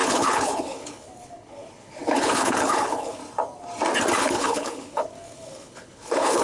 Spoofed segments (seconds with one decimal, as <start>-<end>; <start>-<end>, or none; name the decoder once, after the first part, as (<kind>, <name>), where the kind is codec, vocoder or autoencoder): 0.0-3.2 (codec, HILCodec); 4.2-6.4